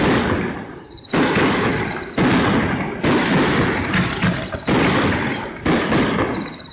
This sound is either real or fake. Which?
real